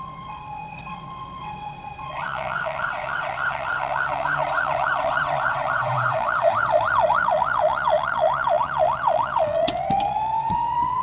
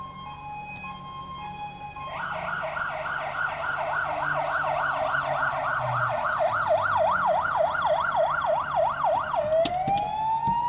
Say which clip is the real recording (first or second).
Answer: second